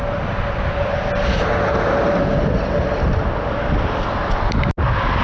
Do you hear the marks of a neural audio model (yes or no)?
no